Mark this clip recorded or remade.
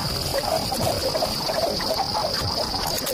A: recorded